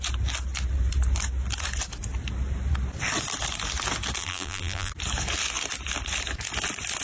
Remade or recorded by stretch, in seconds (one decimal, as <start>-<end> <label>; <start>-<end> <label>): 0.0-4.2 recorded; 4.2-4.9 remade; 4.9-7.0 recorded